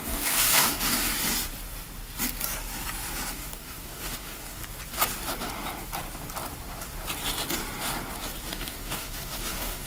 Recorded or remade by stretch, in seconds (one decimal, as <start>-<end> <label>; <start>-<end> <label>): 0.0-1.1 remade; 1.1-3.3 recorded; 3.3-4.6 remade; 4.6-8.5 recorded; 8.5-9.9 remade